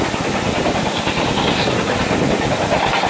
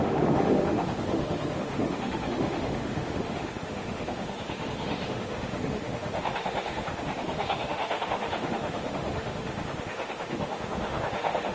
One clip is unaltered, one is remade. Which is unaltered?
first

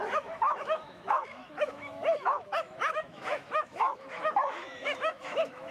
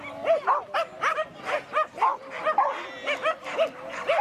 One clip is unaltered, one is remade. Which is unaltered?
second